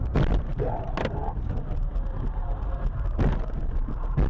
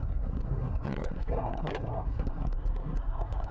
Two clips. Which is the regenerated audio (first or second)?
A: second